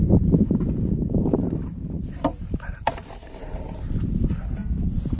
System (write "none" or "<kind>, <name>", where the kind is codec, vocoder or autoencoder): vocoder, BigVGAN v2